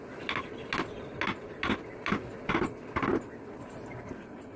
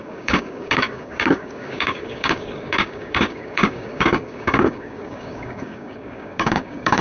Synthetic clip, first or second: second